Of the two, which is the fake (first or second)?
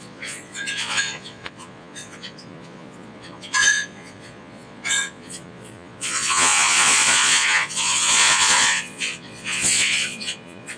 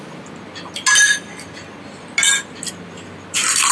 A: first